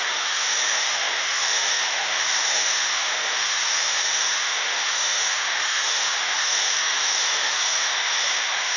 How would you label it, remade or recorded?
remade